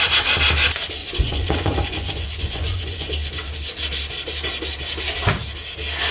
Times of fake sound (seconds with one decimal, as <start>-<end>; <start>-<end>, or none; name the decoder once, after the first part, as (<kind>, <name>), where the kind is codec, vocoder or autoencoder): 1.0-3.1 (vocoder, Vocos)